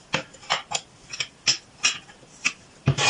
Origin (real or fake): real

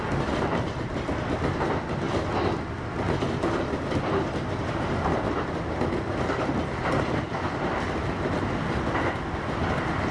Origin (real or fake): real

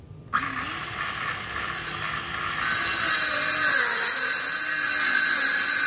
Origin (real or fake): real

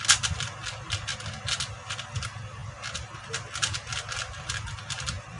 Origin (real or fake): real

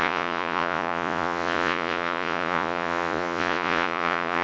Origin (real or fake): fake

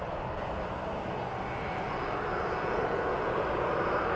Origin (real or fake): real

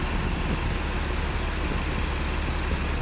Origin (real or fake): real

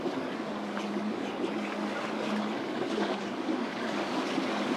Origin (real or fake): fake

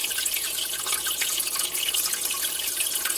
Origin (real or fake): fake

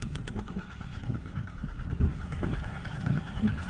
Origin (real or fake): fake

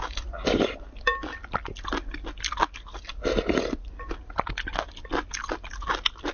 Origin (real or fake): real